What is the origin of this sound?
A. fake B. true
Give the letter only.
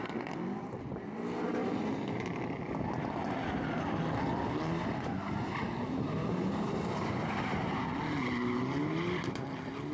B